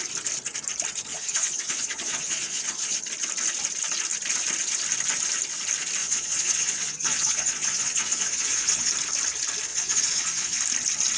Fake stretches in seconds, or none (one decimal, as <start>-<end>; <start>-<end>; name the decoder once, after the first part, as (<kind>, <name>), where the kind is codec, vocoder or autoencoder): 1.1-3.0 (vocoder, Vocos); 6.0-8.9; 9.7-10.6